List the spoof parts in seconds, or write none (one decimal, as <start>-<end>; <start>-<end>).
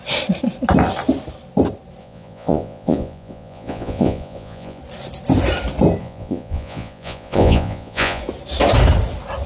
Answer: 2.0-4.8; 6.0-8.2